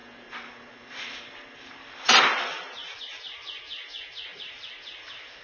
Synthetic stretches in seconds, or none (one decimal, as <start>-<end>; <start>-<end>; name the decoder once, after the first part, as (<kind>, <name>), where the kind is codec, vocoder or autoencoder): 2.8-5.0 (vocoder, BigVGAN v2)